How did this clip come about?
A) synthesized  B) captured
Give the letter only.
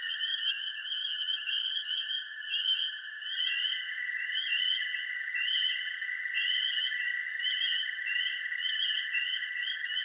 A